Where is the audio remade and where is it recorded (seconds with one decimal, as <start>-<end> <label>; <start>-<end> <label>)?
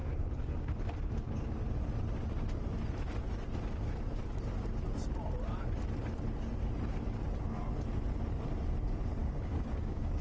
0.0-9.2 recorded; 9.2-10.2 remade